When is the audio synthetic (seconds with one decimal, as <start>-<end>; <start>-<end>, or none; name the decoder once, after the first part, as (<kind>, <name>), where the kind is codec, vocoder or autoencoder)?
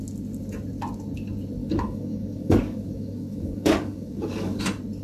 1.6-4.6 (codec, DAC)